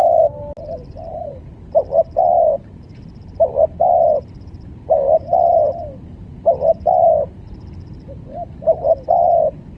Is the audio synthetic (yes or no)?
yes